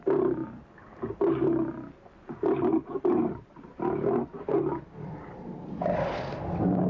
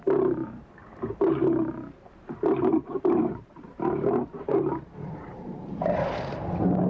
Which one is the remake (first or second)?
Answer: second